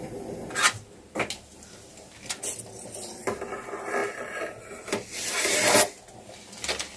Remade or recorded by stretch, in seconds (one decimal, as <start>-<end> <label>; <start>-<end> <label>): 0.0-7.0 recorded